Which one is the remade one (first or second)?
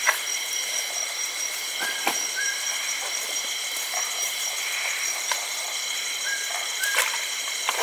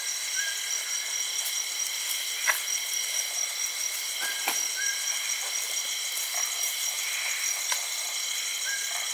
first